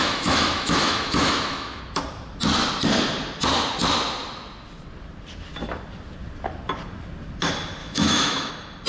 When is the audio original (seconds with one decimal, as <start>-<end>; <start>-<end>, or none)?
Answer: 1.8-7.8; 8.5-8.9